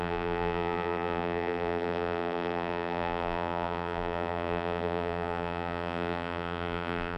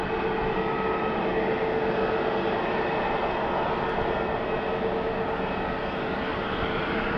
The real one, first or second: second